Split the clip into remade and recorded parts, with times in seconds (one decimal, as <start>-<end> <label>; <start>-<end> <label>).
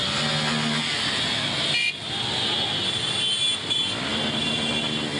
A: 0.0-5.2 recorded